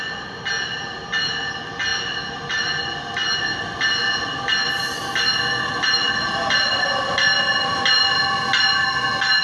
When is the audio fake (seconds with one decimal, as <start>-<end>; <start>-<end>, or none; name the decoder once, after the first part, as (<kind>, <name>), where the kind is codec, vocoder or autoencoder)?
none

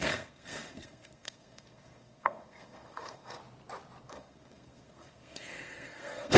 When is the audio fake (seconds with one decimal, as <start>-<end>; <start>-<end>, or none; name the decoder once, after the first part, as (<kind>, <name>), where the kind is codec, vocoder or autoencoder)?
0.0-3.4 (codec, SNAC); 4.1-6.4

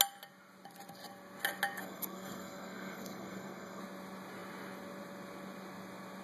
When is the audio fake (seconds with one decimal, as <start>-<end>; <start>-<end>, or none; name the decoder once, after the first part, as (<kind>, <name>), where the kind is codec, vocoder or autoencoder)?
1.8-3.8 (codec, SNAC)